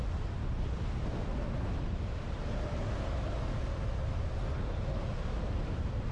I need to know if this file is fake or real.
real